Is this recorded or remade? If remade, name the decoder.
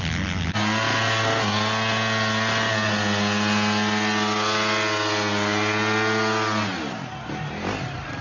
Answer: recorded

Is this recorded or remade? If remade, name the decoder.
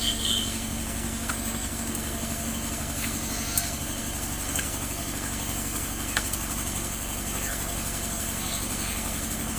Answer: remade, codec, SNAC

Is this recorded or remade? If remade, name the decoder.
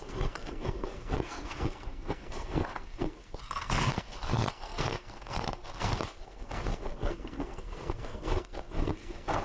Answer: remade, codec, SNAC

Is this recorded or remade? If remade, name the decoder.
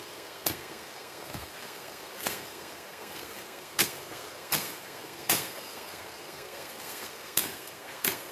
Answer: remade, codec, SNAC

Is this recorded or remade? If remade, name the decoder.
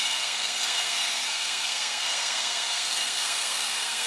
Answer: remade, codec, SNAC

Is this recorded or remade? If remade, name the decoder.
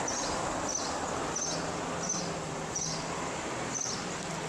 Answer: recorded